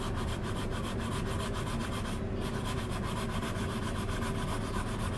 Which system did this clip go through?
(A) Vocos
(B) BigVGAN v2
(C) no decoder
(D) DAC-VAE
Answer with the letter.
C